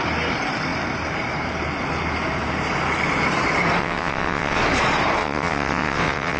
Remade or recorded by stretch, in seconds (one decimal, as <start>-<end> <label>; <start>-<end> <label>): 0.0-3.8 recorded; 3.8-4.6 remade; 4.6-5.2 recorded; 5.2-6.4 remade